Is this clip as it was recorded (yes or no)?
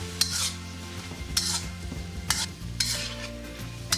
yes